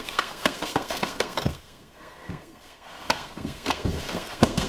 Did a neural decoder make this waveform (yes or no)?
yes